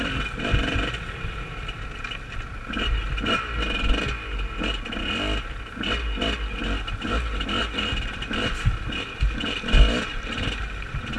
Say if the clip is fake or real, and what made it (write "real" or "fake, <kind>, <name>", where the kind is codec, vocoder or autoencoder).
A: real